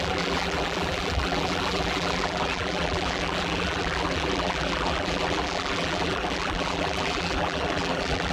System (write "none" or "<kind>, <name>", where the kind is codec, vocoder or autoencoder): vocoder, BigVGAN v2